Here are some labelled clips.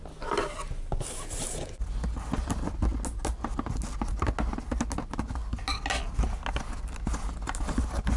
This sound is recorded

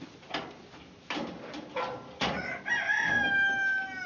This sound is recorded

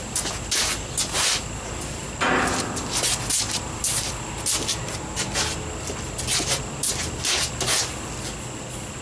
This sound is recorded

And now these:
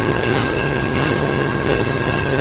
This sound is remade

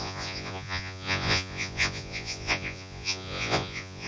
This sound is remade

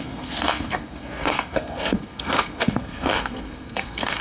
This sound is remade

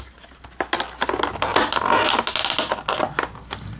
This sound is recorded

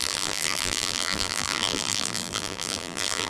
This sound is remade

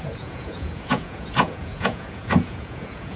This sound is remade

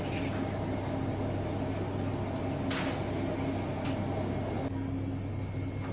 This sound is recorded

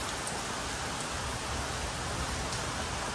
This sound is recorded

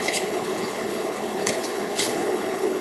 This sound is remade